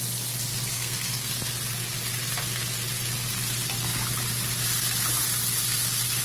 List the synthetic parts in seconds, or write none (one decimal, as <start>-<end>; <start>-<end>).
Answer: 0.7-1.3